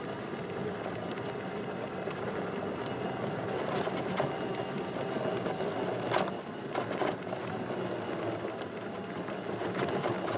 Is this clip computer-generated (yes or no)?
no